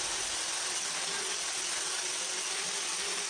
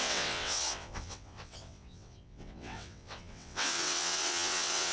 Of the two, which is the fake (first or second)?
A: second